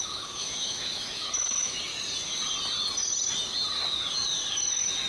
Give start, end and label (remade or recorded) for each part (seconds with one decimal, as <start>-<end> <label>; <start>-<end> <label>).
0.0-1.9 remade; 1.9-5.1 recorded